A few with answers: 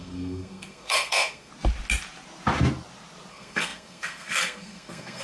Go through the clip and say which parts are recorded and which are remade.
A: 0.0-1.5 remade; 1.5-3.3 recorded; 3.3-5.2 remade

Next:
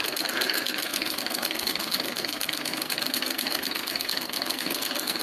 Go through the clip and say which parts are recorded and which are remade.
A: 0.0-5.2 remade

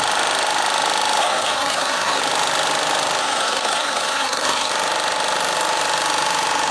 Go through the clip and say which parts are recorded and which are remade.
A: 0.0-1.2 recorded; 1.2-2.2 remade; 2.2-3.2 recorded; 3.2-4.7 remade; 4.7-6.7 recorded

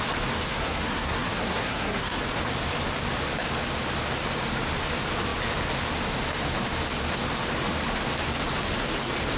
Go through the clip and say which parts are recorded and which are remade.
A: 0.0-0.4 recorded; 0.4-2.2 remade; 2.2-9.4 recorded

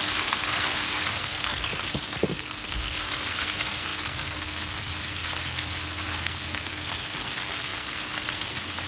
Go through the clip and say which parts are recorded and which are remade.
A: 0.0-8.9 remade

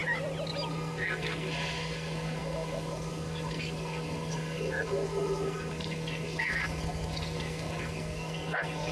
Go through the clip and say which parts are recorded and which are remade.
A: 0.0-0.7 recorded; 0.7-8.9 remade